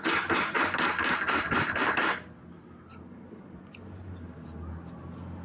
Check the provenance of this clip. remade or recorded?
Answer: recorded